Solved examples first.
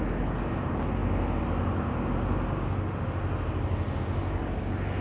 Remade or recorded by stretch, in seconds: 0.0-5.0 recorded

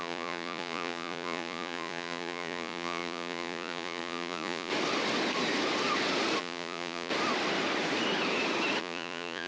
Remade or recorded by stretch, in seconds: 0.0-4.7 remade; 4.7-6.4 recorded; 6.4-7.1 remade; 7.1-8.8 recorded; 8.8-9.5 remade